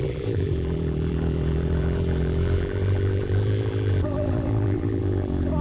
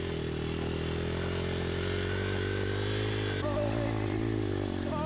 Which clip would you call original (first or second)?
second